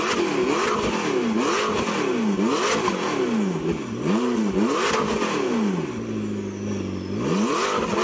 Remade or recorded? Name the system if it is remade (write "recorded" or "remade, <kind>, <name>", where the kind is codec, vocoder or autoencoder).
recorded